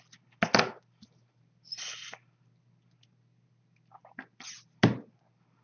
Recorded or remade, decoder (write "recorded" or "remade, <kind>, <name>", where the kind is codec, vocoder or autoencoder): recorded